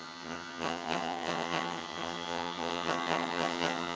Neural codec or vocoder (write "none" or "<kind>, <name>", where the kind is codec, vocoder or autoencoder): vocoder, HiFi-GAN